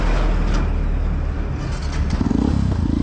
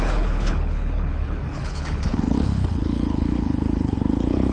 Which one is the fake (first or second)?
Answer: second